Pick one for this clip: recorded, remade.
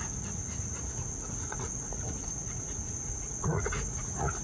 remade